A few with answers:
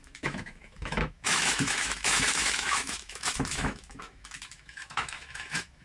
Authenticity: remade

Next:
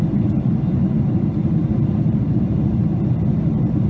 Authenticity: remade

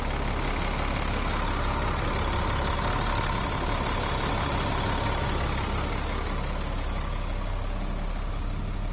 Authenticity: recorded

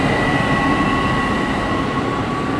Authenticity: recorded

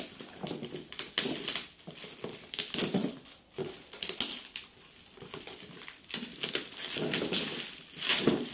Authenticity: recorded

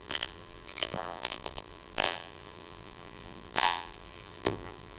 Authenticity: remade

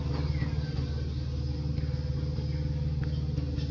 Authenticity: recorded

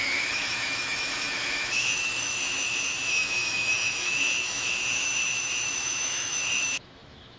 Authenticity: remade